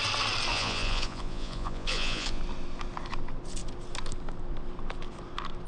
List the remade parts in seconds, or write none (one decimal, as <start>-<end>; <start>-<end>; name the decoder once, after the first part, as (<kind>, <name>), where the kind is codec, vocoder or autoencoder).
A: 0.5-2.4 (vocoder, Vocos)